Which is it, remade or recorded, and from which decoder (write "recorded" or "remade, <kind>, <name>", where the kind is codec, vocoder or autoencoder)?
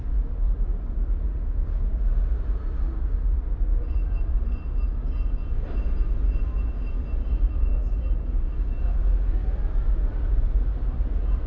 recorded